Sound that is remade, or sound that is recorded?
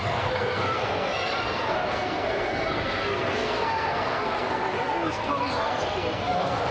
remade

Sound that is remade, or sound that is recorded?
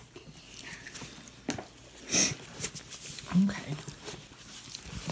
recorded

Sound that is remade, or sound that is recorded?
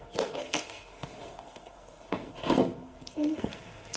remade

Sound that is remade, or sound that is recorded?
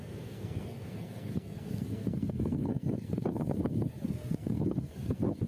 remade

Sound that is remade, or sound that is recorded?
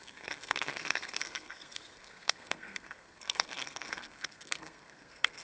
remade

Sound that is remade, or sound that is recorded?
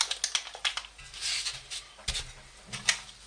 recorded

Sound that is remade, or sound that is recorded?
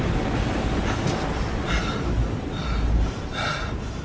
recorded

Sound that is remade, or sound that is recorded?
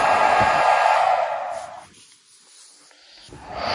recorded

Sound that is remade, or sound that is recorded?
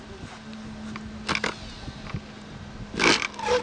recorded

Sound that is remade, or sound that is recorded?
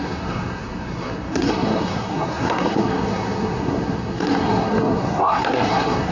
remade